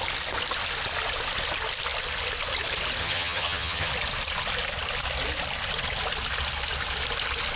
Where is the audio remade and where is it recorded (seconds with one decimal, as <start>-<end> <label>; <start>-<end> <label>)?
0.0-3.0 recorded; 3.0-3.9 remade; 3.9-7.6 recorded